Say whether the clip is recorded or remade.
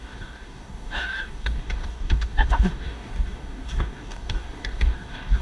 remade